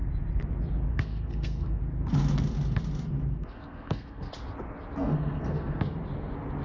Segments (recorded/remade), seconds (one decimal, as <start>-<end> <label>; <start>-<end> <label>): 0.0-0.9 recorded; 0.9-1.8 remade; 1.8-3.3 recorded; 3.3-4.3 remade; 4.3-5.0 recorded; 5.0-5.8 remade; 5.8-6.6 recorded